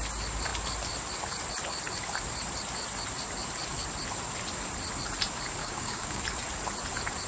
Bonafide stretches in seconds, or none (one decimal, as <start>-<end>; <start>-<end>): 0.0-5.6; 6.2-7.3